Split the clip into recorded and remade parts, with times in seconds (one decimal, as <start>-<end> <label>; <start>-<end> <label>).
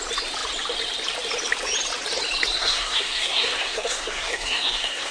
0.0-2.6 recorded; 2.6-5.1 remade